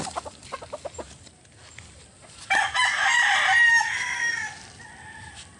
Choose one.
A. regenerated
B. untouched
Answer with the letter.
B